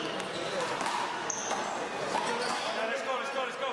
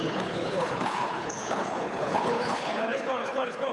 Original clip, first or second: first